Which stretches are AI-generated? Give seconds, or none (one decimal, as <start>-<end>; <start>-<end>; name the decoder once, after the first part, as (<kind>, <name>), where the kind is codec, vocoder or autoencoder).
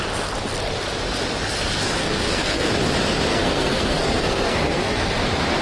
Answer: 2.0-2.7 (codec, SNAC); 3.3-5.1